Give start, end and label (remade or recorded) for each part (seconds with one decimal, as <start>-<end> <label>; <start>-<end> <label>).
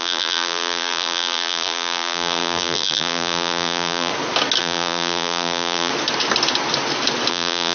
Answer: 0.0-4.1 remade; 4.1-4.6 recorded; 4.6-5.9 remade; 5.9-7.3 recorded; 7.3-7.7 remade